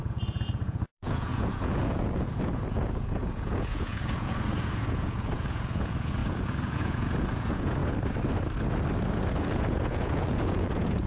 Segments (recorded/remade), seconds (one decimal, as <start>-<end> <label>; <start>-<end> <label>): 0.0-7.8 remade; 7.8-9.1 recorded; 9.1-11.1 remade